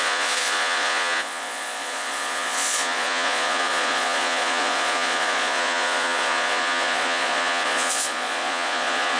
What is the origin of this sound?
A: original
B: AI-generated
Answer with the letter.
B